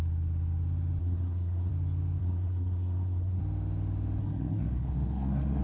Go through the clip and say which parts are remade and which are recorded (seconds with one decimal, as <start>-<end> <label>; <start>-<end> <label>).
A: 0.0-1.0 recorded; 1.0-1.7 remade; 1.7-2.2 recorded; 2.2-3.4 remade; 3.4-4.2 recorded; 4.2-5.6 remade